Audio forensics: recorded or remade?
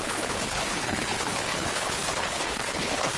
remade